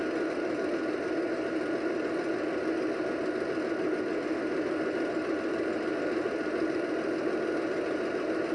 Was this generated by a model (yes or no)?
no